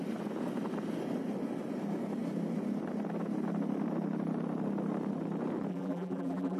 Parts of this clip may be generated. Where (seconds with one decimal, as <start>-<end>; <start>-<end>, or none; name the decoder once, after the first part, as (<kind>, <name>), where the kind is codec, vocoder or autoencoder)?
5.7-6.6 (vocoder, BigVGAN v2)